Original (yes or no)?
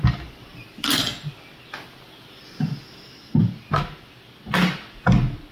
yes